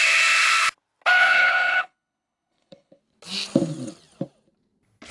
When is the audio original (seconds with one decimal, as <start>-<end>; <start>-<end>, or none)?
0.0-1.2; 3.0-5.1